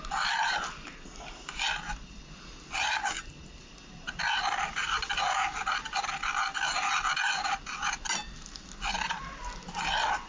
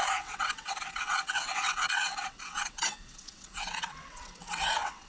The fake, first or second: second